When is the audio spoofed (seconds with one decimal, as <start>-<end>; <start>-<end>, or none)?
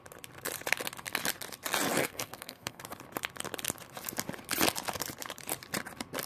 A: 2.0-2.8